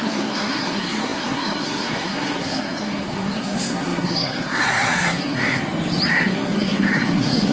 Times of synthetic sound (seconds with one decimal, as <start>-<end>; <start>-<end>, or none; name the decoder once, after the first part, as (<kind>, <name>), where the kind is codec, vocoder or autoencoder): 0.0-5.6 (codec, SNAC); 6.1-7.5